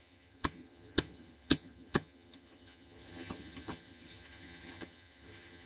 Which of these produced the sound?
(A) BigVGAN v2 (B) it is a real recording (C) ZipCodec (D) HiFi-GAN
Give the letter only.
D